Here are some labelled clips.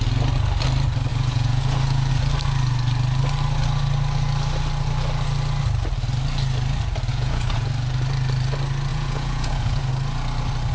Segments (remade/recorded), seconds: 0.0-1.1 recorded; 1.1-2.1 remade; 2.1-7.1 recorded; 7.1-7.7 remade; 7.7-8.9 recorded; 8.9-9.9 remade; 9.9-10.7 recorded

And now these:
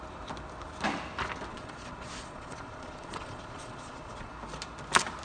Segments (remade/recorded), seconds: 0.0-1.5 recorded; 1.5-4.3 remade; 4.3-5.2 recorded

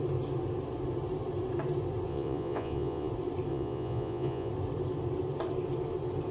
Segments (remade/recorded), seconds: 0.0-2.1 recorded; 2.1-3.1 remade; 3.1-3.5 recorded; 3.5-4.5 remade; 4.5-6.3 recorded

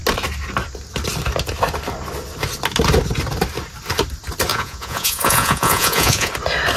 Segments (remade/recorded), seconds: 0.0-4.5 recorded; 4.5-6.3 remade; 6.3-6.8 recorded